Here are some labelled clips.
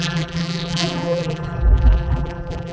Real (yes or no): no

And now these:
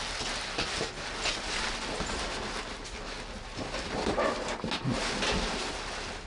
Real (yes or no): yes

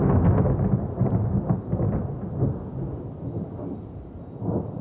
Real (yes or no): yes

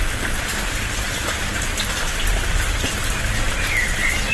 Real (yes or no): no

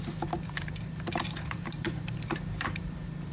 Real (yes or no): no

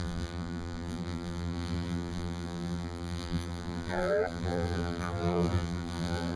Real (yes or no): no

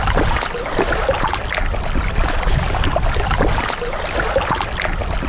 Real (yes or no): yes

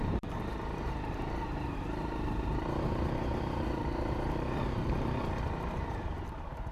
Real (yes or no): no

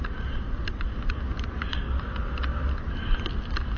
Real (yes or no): yes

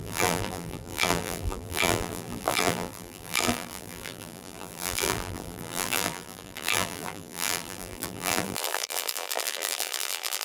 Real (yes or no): no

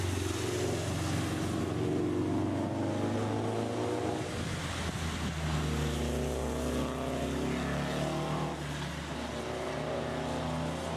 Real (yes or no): yes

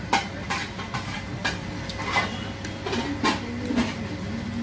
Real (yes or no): yes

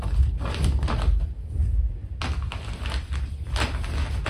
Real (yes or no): yes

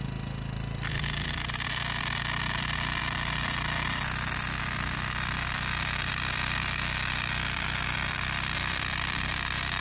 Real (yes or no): no